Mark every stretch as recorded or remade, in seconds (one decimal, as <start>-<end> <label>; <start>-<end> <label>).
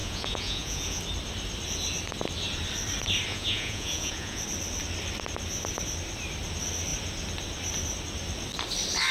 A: 0.0-1.0 remade; 1.0-3.3 recorded; 3.3-4.4 remade; 4.4-9.1 recorded